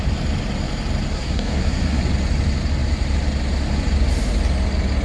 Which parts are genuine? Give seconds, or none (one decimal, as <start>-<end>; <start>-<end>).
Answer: 0.0-1.1; 2.0-5.0